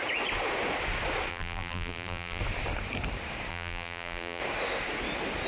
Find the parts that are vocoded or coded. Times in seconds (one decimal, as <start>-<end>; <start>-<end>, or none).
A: 1.3-2.4; 3.5-4.4